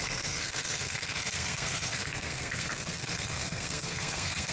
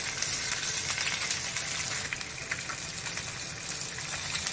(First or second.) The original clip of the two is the second